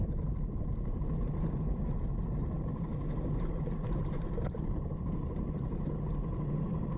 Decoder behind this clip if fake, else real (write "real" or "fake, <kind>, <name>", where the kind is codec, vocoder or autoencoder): fake, vocoder, BigVGAN v2